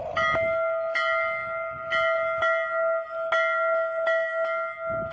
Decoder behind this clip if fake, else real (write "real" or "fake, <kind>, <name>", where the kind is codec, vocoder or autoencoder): real